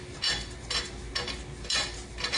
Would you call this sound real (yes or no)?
yes